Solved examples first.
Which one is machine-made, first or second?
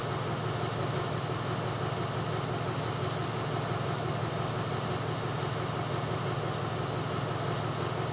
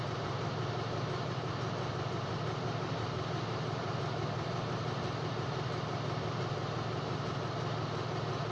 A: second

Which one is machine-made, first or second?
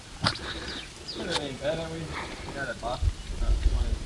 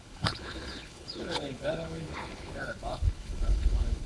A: second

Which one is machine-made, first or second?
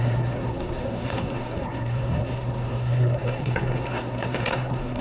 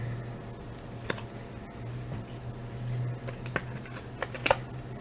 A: first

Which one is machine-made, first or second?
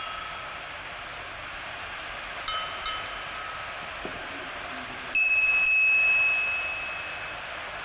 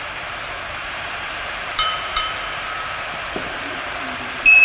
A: second